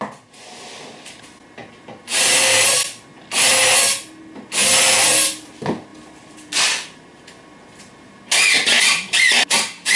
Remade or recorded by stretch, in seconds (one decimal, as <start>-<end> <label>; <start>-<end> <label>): 0.0-10.0 recorded